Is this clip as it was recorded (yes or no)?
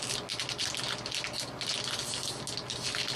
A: yes